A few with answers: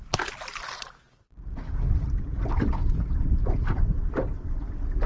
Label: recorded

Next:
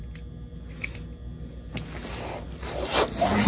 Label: recorded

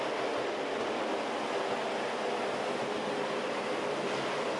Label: recorded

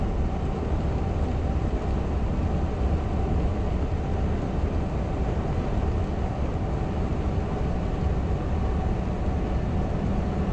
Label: recorded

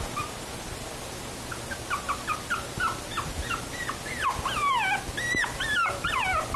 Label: recorded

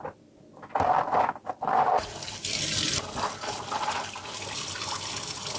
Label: recorded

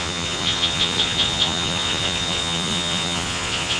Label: remade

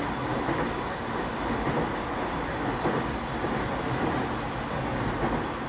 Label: recorded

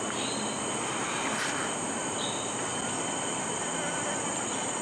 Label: recorded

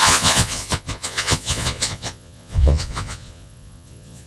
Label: remade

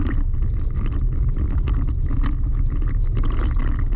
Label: recorded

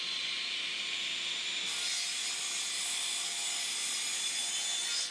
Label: recorded